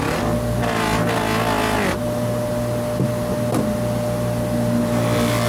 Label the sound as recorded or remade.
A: recorded